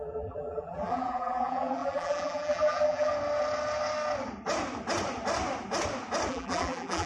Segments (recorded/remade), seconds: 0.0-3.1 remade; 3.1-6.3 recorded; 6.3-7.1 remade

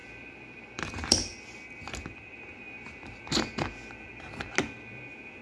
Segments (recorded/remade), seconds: 0.0-3.2 remade; 3.2-5.4 recorded

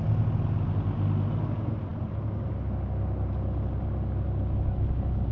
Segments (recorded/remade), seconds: 0.0-5.3 recorded

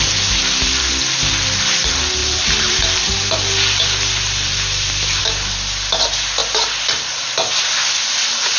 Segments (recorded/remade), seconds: 0.0-2.2 recorded; 2.2-5.2 remade; 5.2-8.6 recorded

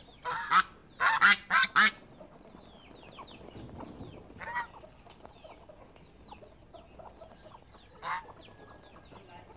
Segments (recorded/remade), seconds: 0.0-9.6 recorded